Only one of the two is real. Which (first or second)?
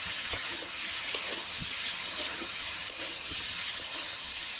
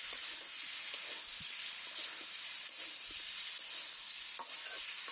second